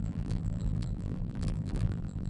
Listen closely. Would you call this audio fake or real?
fake